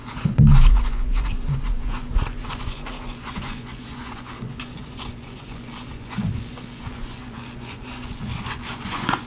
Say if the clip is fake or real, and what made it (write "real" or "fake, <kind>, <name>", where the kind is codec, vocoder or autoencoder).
fake, vocoder, Vocos